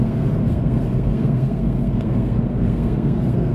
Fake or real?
fake